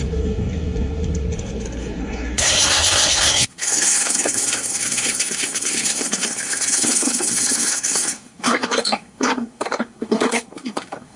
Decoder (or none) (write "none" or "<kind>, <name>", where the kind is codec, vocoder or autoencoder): codec, SNAC